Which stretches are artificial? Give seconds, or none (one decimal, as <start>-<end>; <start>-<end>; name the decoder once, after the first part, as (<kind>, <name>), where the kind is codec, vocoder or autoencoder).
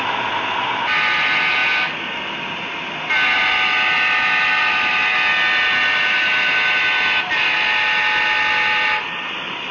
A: none